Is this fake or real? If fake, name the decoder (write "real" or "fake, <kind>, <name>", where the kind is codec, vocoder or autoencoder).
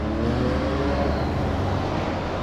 real